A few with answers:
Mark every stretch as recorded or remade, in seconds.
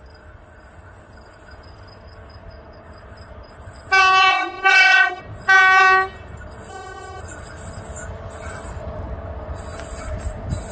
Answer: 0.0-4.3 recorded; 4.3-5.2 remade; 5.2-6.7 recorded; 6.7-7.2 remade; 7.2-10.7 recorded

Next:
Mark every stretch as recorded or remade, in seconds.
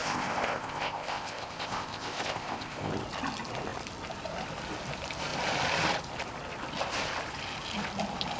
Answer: 0.0-2.9 remade; 2.9-8.4 recorded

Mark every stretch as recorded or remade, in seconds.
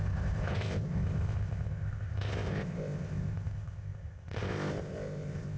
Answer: 0.0-5.6 remade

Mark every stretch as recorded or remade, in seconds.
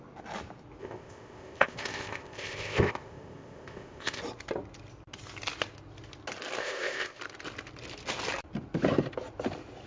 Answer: 0.0-0.8 recorded; 0.8-4.2 remade; 4.2-6.6 recorded; 6.6-7.2 remade; 7.2-9.9 recorded